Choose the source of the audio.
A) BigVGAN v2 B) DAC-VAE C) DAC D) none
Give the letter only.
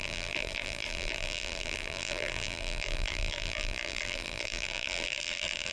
A